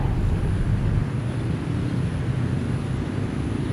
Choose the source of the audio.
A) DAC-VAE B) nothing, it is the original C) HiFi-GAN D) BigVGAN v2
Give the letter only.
B